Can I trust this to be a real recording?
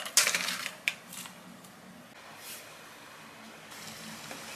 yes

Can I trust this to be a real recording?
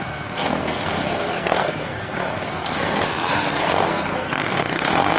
no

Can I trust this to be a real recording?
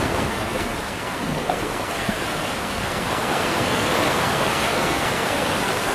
no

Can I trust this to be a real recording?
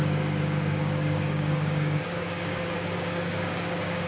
no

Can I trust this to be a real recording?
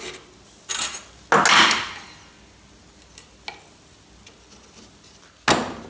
yes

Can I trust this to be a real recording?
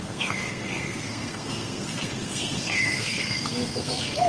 no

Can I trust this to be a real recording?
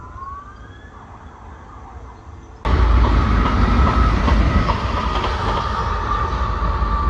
yes